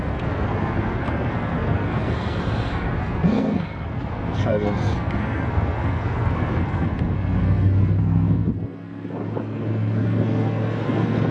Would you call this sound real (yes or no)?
no